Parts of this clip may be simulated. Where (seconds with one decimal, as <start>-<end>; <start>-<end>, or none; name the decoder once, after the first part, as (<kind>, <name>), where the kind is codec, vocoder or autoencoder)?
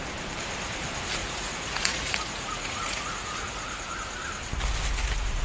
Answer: 1.2-3.9 (vocoder, Vocos)